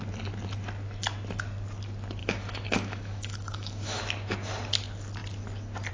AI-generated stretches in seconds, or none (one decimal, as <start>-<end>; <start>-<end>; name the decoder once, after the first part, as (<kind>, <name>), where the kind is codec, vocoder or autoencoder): 2.2-4.0 (autoencoder, DAC-VAE)